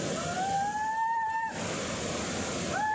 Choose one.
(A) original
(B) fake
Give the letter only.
A